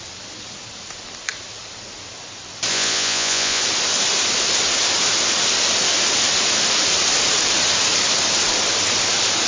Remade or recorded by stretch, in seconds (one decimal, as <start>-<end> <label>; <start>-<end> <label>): 0.0-2.7 recorded; 2.7-3.6 remade; 3.6-9.5 recorded